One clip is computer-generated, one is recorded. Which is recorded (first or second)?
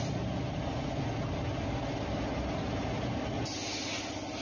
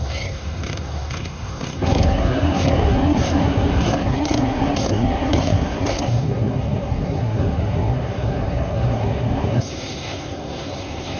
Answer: first